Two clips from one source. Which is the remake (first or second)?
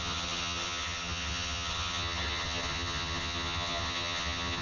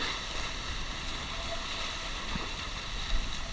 first